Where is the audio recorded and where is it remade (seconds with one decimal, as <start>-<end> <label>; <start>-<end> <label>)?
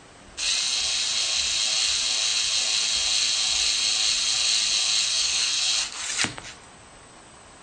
0.0-5.1 recorded; 5.1-5.7 remade; 5.7-7.6 recorded